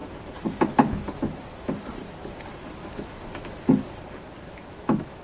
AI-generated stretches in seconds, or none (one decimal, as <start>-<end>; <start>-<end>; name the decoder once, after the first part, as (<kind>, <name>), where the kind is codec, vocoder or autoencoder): 4.6-5.2 (autoencoder, DAC-VAE)

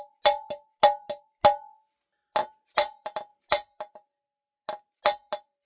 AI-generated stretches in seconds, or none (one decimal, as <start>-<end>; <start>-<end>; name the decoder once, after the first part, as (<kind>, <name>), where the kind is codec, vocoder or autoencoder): none

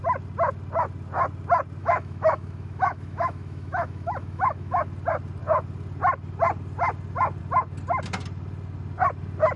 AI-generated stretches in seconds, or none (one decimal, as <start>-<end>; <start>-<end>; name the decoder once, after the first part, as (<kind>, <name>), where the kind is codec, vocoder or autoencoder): 1.8-4.8 (autoencoder, DAC-VAE)

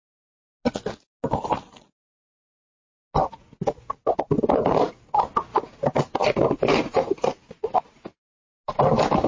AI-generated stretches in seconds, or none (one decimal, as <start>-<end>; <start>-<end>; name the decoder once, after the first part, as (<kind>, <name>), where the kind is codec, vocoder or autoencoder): none

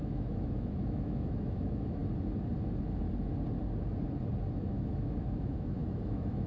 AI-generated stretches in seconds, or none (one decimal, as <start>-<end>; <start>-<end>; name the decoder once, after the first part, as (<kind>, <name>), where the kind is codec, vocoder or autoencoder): 0.0-2.0 (autoencoder, DAC-VAE); 4.5-6.5